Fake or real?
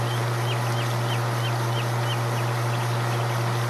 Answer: real